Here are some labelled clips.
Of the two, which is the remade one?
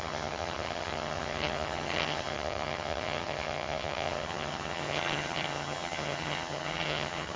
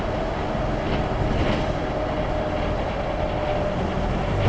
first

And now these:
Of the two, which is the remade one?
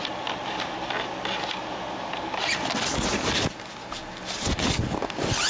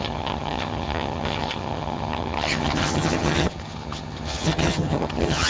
second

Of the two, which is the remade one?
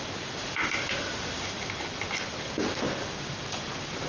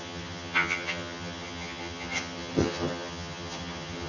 second